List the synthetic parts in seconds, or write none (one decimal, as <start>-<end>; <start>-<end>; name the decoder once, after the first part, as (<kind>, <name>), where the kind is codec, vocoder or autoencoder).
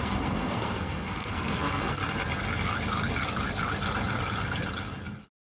0.0-2.0 (codec, SNAC)